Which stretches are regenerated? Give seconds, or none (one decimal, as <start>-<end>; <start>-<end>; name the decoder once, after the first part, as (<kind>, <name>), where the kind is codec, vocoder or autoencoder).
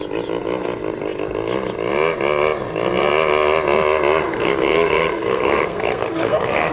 4.2-6.7 (codec, SNAC)